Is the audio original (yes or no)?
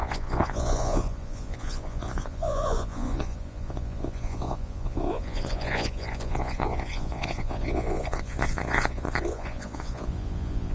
no